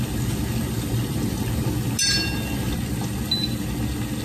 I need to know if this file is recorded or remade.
recorded